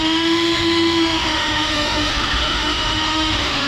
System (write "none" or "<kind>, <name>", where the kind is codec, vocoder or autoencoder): autoencoder, DAC-VAE